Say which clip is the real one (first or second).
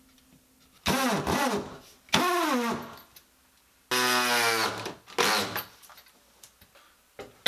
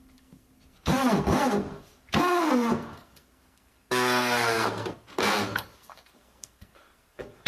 first